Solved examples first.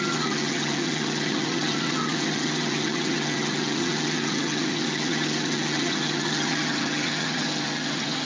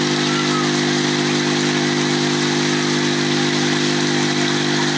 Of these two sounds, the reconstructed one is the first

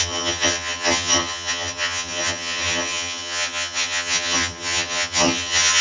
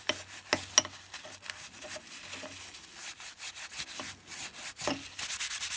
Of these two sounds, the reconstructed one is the first